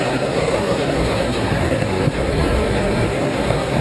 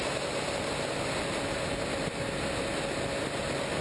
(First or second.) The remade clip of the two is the first